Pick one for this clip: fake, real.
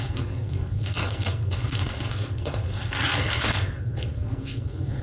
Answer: fake